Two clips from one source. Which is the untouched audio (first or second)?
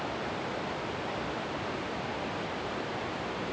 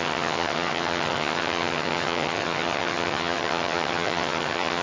first